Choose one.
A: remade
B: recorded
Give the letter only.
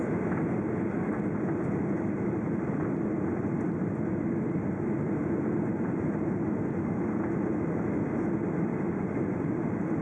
B